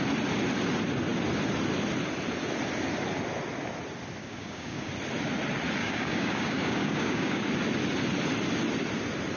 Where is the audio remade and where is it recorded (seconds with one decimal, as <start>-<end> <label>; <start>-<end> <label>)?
0.0-4.2 recorded; 4.2-4.9 remade; 4.9-5.8 recorded; 5.8-7.4 remade; 7.4-9.4 recorded

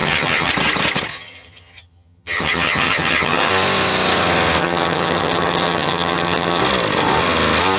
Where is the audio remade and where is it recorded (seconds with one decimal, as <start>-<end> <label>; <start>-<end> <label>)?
0.0-0.5 remade; 0.5-1.1 recorded; 1.1-3.5 remade; 3.5-4.6 recorded; 4.6-6.6 remade; 6.6-7.8 recorded

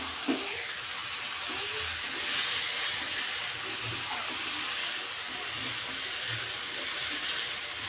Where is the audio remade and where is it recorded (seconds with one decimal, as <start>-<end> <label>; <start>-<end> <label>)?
0.0-4.8 recorded; 4.8-5.3 remade; 5.3-7.9 recorded

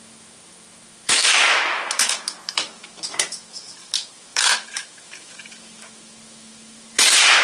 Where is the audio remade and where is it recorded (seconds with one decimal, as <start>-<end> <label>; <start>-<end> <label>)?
0.0-7.4 remade

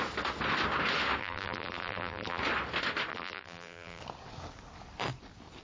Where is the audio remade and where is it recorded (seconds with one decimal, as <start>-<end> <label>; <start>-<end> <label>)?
0.0-1.2 recorded; 1.2-2.4 remade; 2.4-3.1 recorded; 3.1-4.0 remade; 4.0-5.6 recorded

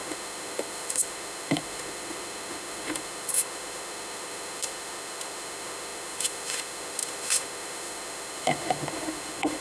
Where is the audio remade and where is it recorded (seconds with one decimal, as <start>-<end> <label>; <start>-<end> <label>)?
0.0-9.6 remade

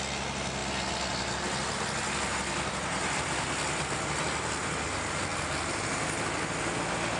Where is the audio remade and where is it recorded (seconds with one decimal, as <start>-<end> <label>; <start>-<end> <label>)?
0.0-7.2 recorded